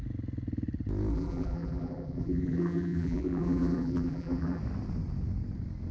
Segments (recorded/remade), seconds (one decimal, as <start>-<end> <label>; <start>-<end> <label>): 0.0-1.1 recorded; 1.1-4.6 remade; 4.6-5.9 recorded